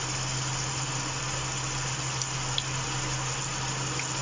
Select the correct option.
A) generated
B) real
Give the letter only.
B